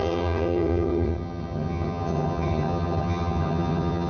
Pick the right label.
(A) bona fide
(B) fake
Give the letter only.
B